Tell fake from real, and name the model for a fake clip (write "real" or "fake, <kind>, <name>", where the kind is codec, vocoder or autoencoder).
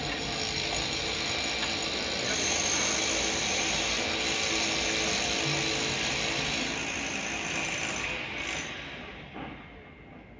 real